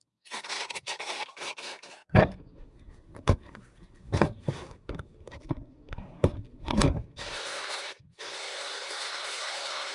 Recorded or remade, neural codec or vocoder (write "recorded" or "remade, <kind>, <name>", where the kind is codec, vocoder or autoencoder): remade, codec, SNAC